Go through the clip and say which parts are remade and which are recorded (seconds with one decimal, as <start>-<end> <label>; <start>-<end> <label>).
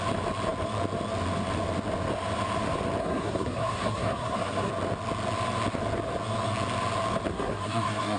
0.0-3.0 recorded; 3.0-4.7 remade; 4.7-7.3 recorded; 7.3-8.2 remade